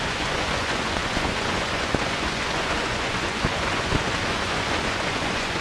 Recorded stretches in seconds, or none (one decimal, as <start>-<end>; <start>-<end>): none